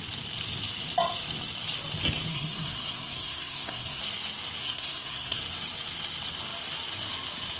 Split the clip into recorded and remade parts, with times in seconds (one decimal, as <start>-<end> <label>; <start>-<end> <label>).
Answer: 0.0-2.3 recorded; 2.3-4.0 remade; 4.0-4.6 recorded; 4.6-5.4 remade; 5.4-7.6 recorded